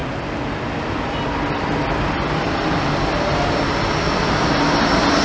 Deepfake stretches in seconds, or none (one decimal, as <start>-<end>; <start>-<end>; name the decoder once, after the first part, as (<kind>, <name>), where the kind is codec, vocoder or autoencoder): none